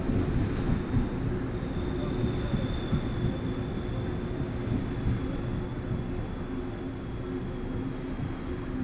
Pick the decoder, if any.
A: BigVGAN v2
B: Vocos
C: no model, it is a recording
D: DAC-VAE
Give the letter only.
C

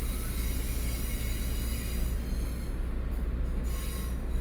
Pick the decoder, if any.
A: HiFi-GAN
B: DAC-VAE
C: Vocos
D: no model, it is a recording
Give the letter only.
D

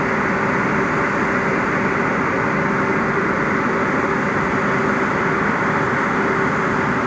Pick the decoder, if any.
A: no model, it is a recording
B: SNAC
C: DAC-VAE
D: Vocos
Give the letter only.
A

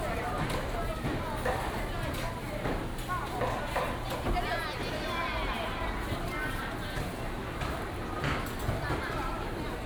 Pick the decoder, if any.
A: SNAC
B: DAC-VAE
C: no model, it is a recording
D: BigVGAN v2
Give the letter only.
C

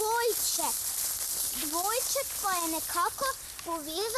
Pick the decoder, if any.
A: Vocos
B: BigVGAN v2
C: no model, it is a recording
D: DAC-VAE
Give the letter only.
C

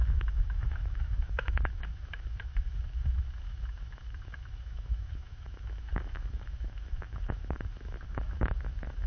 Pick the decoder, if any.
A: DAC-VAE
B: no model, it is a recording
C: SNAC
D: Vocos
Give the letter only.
A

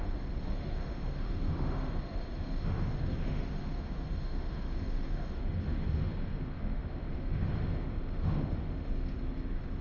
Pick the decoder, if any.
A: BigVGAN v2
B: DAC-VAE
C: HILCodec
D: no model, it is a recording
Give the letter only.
B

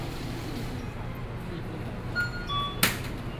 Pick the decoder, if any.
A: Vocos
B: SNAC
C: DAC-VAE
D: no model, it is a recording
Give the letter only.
D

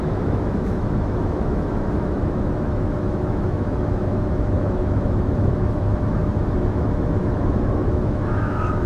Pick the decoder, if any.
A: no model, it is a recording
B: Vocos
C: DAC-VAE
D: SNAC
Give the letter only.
C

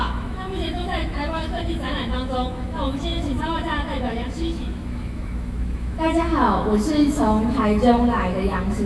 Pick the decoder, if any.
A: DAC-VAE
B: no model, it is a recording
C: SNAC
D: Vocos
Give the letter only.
A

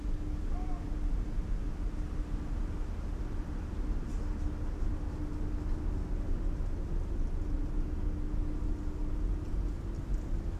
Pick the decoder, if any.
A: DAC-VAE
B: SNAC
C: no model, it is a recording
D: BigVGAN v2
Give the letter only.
C